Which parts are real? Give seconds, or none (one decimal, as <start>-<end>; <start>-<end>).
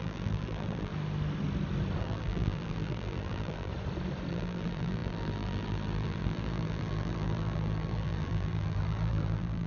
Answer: 0.9-2.0; 3.7-4.3